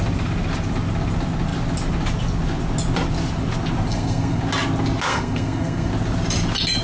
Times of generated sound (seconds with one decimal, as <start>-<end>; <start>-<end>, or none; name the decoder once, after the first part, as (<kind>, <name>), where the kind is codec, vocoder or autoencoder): 3.9-4.4 (codec, SNAC); 5.1-5.9